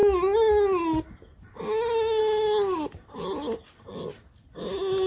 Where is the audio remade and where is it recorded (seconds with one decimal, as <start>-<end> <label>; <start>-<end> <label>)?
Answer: 0.0-5.1 recorded